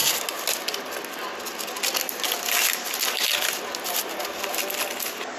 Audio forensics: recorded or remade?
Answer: recorded